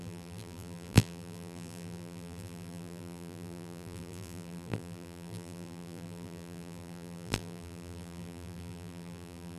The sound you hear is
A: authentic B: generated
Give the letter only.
B